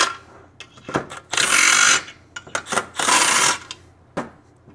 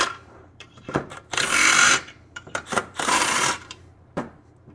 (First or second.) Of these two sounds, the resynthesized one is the second